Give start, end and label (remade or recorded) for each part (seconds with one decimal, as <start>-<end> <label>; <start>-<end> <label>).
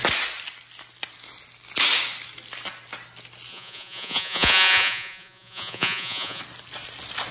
0.0-3.5 recorded; 3.5-6.4 remade; 6.4-7.3 recorded